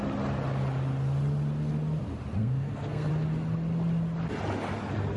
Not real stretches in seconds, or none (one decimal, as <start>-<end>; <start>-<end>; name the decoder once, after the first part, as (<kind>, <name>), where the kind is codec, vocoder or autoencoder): 2.4-3.1 (codec, SNAC)